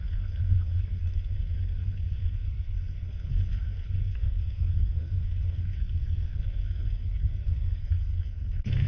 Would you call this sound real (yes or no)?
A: no